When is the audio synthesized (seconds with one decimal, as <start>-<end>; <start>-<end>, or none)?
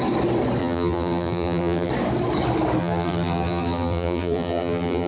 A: 0.6-1.9; 2.8-5.1